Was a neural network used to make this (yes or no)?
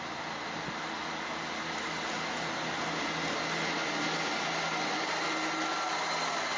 no